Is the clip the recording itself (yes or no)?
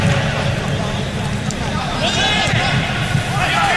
yes